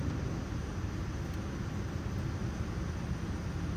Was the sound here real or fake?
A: real